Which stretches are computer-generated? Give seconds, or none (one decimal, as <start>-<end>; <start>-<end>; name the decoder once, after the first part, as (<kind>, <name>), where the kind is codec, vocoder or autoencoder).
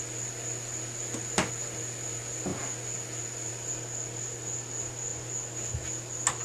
none